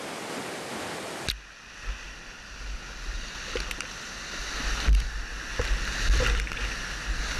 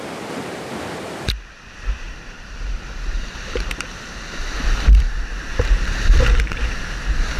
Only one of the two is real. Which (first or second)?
first